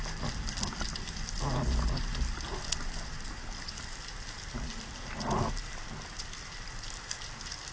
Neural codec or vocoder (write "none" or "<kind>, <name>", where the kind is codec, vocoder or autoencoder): none